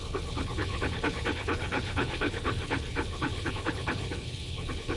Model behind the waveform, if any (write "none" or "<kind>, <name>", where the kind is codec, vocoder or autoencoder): codec, HILCodec